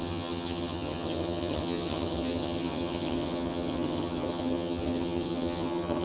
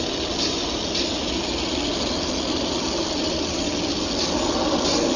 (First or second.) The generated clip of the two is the first